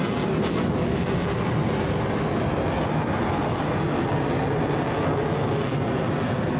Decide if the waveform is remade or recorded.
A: recorded